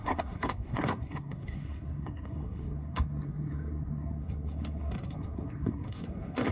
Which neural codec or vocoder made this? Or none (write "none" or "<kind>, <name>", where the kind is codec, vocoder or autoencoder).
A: codec, SNAC